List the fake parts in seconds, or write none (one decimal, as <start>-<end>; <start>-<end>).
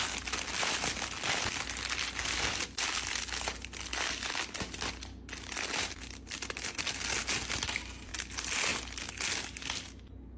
none